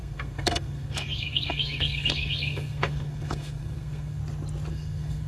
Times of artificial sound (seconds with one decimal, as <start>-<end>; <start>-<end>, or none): 0.0-4.2; 4.7-5.3